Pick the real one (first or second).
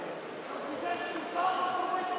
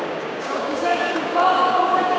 first